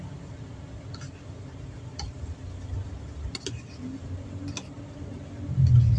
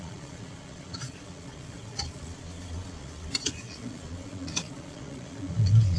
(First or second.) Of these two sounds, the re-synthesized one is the second